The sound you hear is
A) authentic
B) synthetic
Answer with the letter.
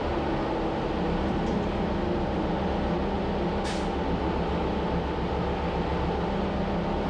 A